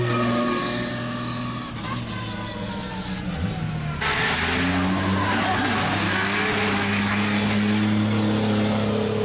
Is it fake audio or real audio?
real